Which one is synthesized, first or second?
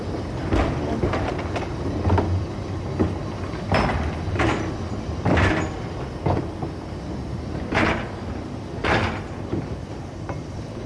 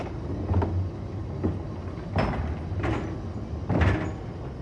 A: first